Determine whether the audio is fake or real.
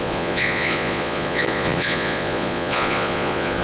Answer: fake